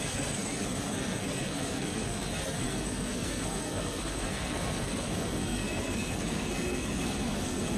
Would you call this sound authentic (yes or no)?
no